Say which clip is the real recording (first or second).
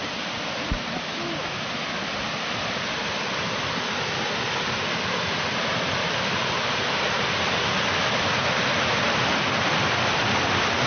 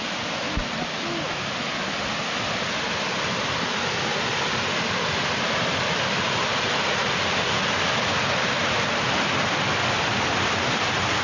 second